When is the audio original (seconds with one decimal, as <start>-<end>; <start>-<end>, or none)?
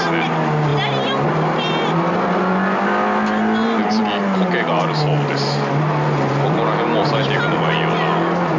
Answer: 0.0-8.6